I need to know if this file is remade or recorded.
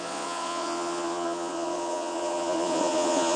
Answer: remade